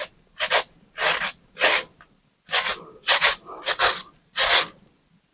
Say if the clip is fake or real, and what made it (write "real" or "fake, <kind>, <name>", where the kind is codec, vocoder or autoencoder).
real